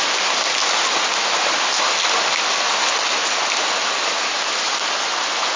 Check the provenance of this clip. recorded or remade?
recorded